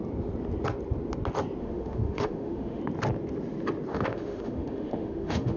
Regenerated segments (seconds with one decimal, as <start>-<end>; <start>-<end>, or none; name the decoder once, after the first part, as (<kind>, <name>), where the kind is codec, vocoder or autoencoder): 1.6-2.8 (autoencoder, DAC-VAE); 3.9-5.6